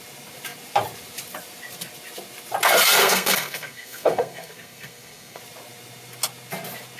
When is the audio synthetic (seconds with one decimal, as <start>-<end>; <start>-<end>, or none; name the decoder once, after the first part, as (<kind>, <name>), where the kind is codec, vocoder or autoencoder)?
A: 3.0-5.4 (codec, SNAC)